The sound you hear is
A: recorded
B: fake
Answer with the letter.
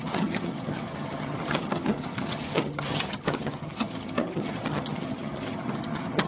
B